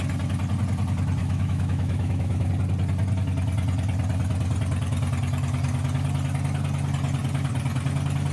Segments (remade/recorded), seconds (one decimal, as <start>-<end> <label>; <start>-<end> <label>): 0.0-1.2 recorded; 1.2-2.5 remade; 2.5-8.3 recorded